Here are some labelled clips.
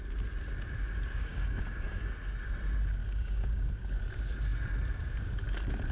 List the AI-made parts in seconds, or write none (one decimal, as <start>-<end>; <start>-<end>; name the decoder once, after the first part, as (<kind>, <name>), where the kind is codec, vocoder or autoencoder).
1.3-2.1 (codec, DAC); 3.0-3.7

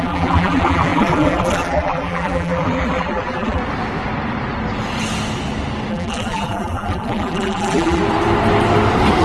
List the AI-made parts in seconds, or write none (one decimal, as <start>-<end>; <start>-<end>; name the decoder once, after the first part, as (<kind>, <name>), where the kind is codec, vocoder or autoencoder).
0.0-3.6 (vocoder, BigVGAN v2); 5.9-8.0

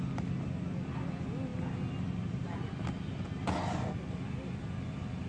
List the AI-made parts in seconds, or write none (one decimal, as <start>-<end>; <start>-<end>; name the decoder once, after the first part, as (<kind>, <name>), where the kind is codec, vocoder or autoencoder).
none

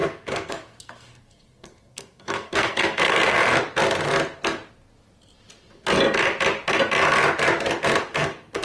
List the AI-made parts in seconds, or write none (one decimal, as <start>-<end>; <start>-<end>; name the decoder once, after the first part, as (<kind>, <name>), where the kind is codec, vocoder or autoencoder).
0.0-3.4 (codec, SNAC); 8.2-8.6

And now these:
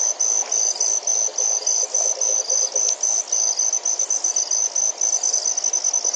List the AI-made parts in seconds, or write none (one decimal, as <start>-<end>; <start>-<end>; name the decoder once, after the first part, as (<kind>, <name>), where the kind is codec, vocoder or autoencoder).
none

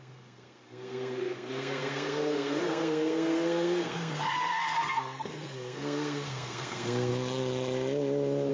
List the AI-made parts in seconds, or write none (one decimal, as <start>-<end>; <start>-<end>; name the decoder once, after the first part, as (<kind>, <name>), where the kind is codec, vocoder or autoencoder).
0.0-7.1 (codec, SNAC)